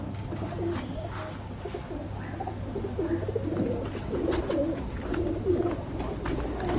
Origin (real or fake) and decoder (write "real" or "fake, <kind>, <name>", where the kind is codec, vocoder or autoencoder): real